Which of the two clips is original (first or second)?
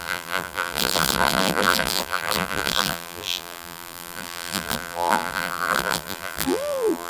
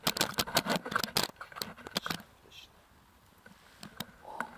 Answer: second